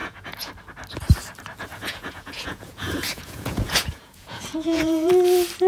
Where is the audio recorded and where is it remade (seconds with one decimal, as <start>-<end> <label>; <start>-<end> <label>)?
0.0-0.5 remade; 0.5-1.7 recorded; 1.7-5.1 remade; 5.1-5.7 recorded